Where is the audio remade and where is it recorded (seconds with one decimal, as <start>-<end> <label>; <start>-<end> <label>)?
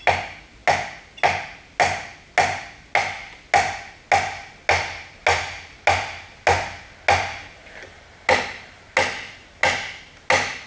0.0-10.7 recorded